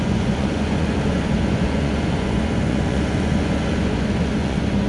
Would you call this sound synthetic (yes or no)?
yes